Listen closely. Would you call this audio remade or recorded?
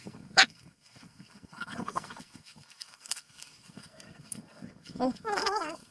remade